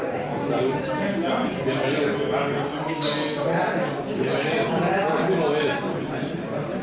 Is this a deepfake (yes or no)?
no